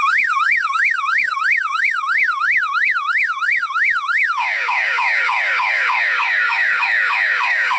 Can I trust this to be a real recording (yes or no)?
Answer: no